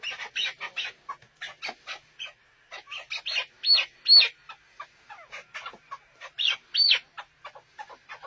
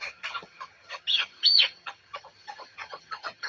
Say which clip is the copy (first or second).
second